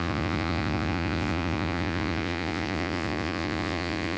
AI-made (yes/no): yes